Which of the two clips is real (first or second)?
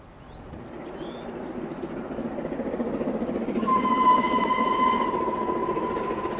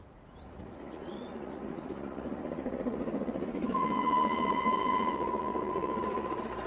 first